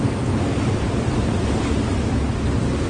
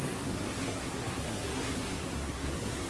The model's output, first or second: second